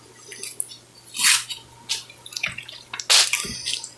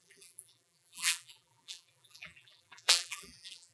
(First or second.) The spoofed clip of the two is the second